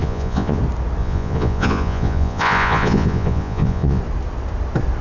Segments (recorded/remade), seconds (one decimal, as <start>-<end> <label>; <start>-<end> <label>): 0.0-0.6 remade; 0.6-1.0 recorded; 1.0-4.0 remade; 4.0-5.0 recorded